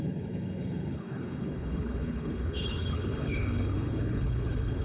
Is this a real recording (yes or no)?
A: no